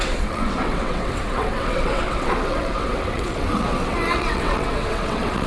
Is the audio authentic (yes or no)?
no